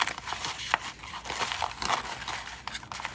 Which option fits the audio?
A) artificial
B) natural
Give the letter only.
B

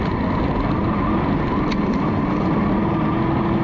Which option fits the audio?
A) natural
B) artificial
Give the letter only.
A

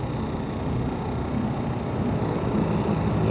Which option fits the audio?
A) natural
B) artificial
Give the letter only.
A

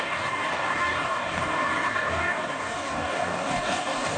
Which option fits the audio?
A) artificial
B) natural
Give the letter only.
A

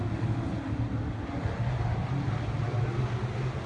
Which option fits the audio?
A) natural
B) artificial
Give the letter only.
A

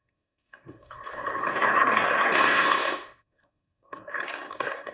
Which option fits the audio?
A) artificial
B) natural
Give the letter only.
A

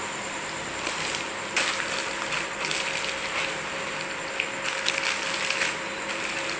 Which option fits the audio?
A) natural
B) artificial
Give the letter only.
A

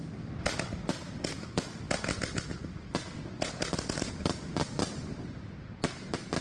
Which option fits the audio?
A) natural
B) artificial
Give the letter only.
A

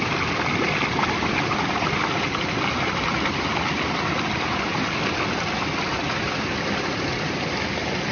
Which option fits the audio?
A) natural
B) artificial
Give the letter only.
A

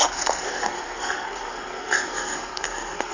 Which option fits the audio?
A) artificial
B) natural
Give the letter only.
A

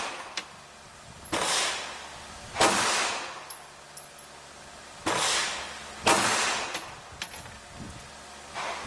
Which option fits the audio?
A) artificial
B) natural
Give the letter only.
B